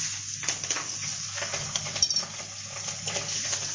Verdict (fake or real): real